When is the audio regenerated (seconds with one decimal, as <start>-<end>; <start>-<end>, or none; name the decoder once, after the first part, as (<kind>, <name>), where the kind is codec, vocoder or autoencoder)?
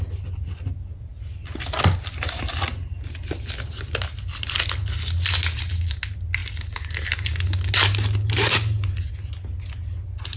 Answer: none